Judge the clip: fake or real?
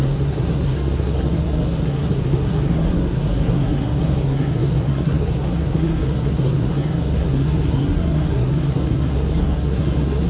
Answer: fake